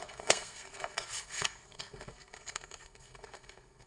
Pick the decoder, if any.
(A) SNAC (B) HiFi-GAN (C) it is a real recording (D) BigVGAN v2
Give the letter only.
A